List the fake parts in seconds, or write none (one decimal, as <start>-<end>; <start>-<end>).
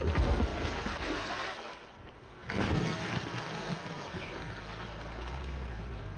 0.0-6.2